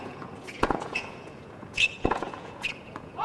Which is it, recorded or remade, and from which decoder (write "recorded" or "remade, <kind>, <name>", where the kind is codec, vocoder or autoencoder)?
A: remade, vocoder, Vocos